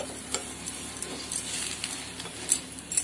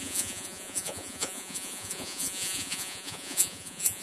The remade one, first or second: second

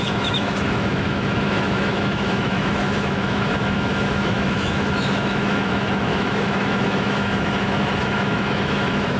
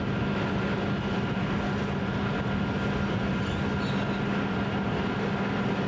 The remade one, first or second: first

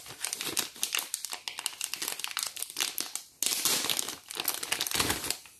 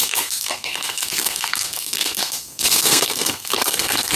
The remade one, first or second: second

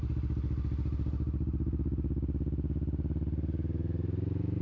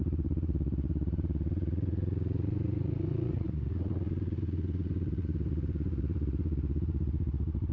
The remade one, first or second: second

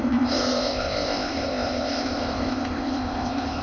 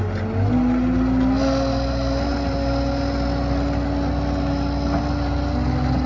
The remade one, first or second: first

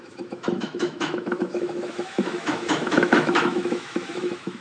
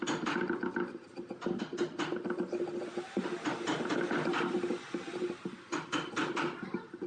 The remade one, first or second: first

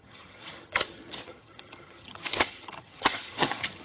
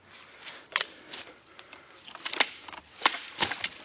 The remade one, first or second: first